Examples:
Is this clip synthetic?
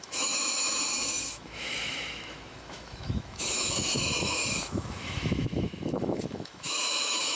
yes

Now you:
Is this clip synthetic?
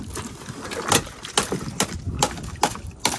no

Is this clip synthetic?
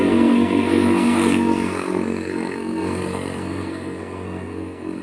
yes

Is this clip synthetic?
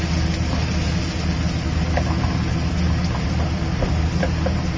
no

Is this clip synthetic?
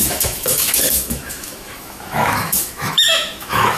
yes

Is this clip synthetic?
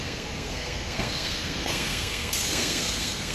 yes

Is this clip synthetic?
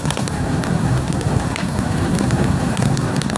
yes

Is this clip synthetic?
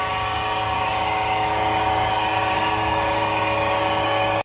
yes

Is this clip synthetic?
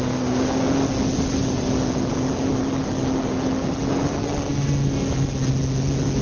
no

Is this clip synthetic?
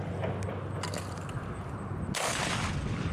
no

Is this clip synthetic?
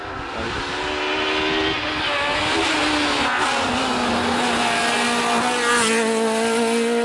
no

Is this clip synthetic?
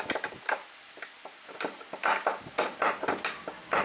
no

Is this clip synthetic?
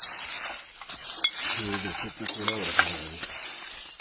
no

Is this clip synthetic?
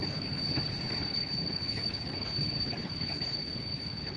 yes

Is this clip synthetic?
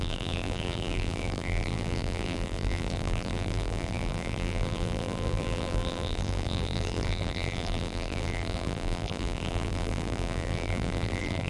yes